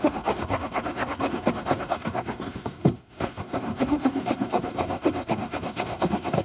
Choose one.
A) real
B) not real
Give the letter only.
B